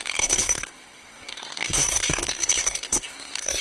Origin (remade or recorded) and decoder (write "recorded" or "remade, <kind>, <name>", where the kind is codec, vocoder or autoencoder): remade, codec, SNAC